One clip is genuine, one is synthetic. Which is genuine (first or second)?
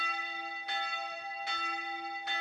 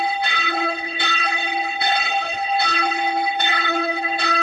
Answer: first